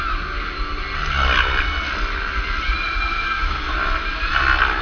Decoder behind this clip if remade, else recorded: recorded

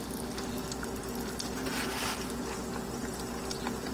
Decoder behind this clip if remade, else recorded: recorded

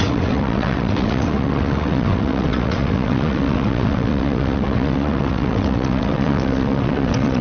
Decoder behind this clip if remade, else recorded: remade, vocoder, WaveNeXt